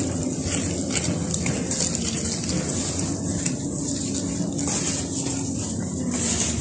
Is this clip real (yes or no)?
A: yes